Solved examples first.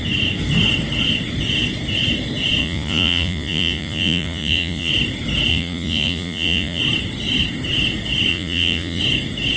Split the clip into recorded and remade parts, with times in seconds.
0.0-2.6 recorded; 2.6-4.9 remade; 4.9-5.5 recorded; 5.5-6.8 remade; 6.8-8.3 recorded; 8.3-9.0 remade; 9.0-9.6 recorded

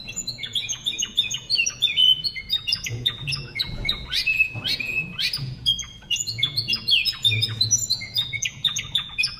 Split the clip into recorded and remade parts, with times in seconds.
0.0-9.4 remade

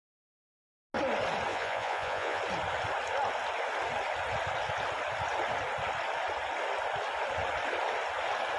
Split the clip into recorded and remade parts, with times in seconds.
0.0-1.5 recorded; 1.5-2.4 remade; 2.4-8.6 recorded